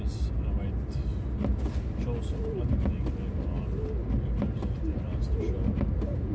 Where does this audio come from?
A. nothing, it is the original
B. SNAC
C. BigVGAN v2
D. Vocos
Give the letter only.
A